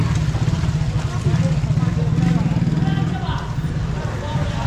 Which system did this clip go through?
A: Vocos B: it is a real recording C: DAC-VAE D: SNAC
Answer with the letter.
B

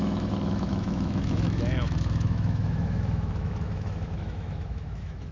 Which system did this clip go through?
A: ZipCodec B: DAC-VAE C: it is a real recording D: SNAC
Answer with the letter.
B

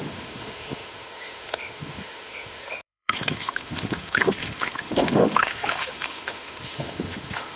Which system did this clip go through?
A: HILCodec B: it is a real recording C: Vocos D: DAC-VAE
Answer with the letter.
D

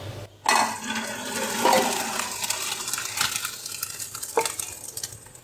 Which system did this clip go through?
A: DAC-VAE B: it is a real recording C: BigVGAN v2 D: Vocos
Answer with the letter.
B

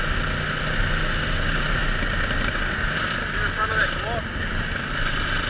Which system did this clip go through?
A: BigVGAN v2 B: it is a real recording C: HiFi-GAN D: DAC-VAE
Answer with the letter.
B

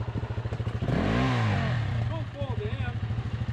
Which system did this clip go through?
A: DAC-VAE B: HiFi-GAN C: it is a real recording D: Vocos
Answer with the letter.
C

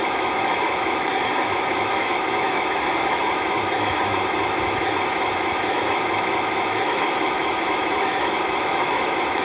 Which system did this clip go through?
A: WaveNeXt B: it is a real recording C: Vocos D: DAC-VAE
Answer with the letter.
D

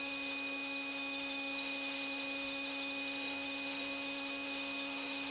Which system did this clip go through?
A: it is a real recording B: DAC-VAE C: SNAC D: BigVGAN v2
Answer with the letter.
B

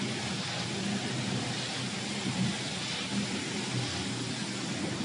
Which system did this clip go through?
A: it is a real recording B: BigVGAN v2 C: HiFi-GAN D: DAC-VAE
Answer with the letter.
A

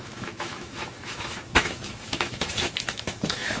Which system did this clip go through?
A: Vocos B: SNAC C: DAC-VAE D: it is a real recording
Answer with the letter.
C